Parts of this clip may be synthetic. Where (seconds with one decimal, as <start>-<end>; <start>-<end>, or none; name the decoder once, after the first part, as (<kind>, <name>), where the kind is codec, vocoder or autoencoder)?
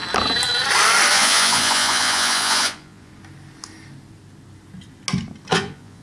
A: 1.1-3.1 (vocoder, Vocos); 5.5-6.0